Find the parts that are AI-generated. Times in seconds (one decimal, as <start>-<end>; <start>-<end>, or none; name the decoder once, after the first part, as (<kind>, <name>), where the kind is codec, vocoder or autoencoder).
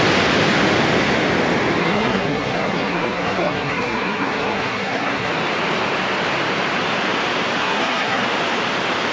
1.8-5.3 (codec, SNAC); 7.6-8.2